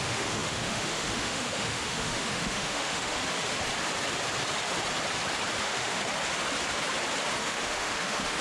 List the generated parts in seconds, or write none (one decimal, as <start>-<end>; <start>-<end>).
0.0-3.2; 5.6-6.0; 7.4-8.4